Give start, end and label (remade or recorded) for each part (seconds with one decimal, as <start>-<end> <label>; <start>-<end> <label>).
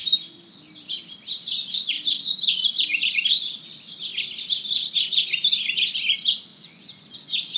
0.0-6.5 recorded; 6.5-7.6 remade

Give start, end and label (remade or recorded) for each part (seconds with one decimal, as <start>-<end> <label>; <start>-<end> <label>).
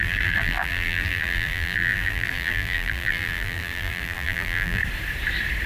0.0-4.8 remade; 4.8-5.7 recorded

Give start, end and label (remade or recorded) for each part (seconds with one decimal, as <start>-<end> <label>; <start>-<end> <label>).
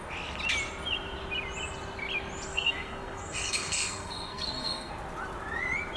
0.0-2.5 recorded; 2.5-4.9 remade; 4.9-6.0 recorded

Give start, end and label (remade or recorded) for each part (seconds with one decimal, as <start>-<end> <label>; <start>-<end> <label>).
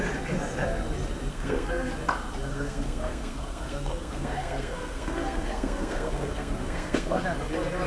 0.0-1.3 recorded; 1.3-1.9 remade; 1.9-2.5 recorded; 2.5-7.2 remade; 7.2-7.9 recorded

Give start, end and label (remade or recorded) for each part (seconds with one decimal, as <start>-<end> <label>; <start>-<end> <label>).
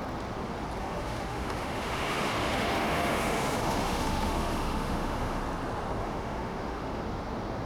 0.0-0.8 recorded; 0.8-5.4 remade; 5.4-6.0 recorded; 6.0-7.0 remade; 7.0-7.7 recorded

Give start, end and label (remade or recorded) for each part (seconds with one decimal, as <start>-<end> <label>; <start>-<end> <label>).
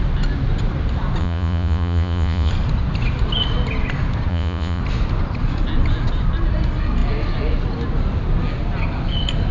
0.0-1.2 recorded; 1.2-2.5 remade; 2.5-4.3 recorded; 4.3-4.8 remade; 4.8-9.5 recorded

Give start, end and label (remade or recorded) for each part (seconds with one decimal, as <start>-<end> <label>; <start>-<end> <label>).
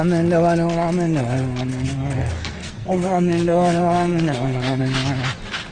0.0-1.7 recorded; 1.7-4.8 remade; 4.8-5.7 recorded